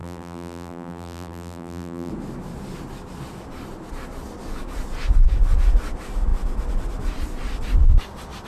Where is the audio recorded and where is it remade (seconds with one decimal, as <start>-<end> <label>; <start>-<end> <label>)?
0.0-2.1 remade; 2.1-8.5 recorded